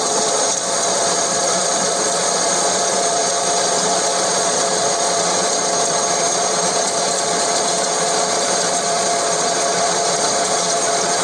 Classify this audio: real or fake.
fake